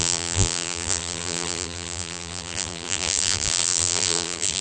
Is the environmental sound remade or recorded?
remade